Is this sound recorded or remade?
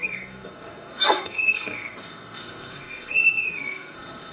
remade